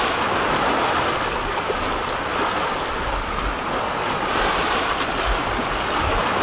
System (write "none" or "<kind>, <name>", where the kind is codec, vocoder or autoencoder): none